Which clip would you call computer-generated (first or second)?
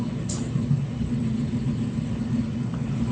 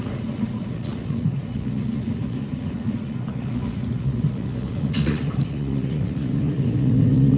second